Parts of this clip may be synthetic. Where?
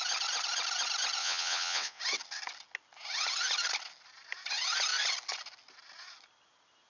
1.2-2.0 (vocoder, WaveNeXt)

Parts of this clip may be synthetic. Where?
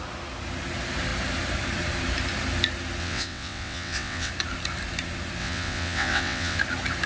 3.0-4.3 (vocoder, WaveNeXt); 5.4-6.6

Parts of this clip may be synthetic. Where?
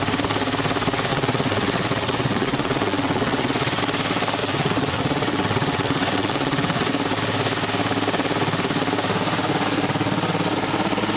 1.1-3.8 (vocoder, WaveNeXt); 4.4-6.9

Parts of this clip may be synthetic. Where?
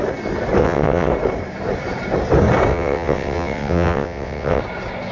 0.6-1.1 (vocoder, WaveNeXt); 2.7-4.6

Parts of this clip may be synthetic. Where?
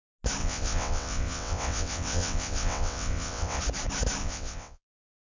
0.4-3.6 (vocoder, WaveNeXt); 4.2-5.0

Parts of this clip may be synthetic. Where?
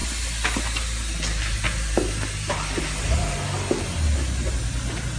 none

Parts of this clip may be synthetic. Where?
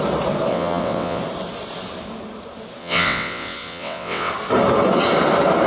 0.5-1.2 (vocoder, WaveNeXt); 2.8-4.3